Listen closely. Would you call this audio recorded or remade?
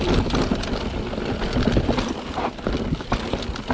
recorded